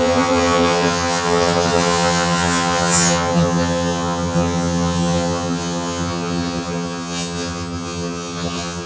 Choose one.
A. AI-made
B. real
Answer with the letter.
A